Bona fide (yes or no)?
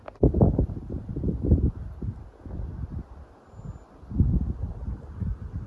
yes